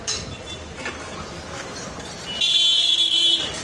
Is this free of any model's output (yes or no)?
yes